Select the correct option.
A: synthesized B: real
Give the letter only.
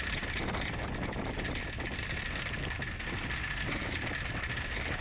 B